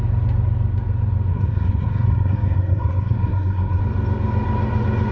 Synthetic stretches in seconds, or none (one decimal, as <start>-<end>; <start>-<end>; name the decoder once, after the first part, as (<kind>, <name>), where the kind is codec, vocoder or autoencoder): 1.3-3.8 (codec, SNAC)